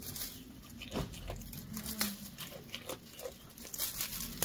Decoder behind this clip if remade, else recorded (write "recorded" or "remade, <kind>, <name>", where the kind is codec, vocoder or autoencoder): recorded